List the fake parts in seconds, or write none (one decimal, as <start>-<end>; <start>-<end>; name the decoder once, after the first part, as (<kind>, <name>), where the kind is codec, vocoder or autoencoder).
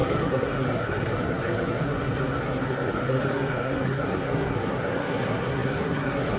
0.0-6.4 (codec, SNAC)